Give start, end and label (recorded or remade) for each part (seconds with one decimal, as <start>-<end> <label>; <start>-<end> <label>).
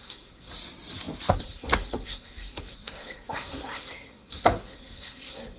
0.0-0.5 remade; 0.5-1.3 recorded; 1.3-5.6 remade